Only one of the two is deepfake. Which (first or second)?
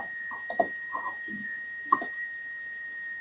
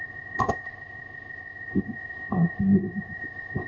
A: second